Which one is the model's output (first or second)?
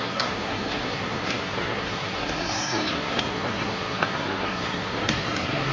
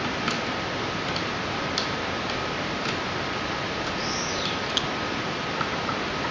first